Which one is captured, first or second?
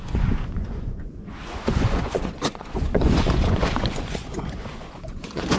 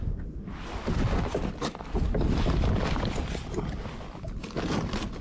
second